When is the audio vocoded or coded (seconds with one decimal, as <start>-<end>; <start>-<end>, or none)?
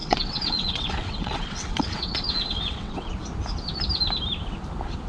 0.0-3.1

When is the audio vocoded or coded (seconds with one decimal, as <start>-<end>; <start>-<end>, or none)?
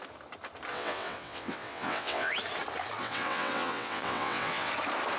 0.7-2.3; 3.0-4.7